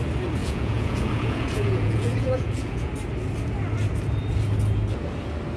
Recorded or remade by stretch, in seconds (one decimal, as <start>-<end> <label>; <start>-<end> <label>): 0.0-0.4 recorded; 0.4-2.9 remade; 2.9-5.6 recorded